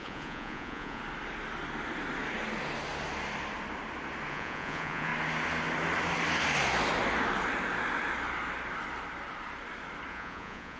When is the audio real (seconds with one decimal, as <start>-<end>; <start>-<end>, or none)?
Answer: 1.0-4.3; 5.1-10.1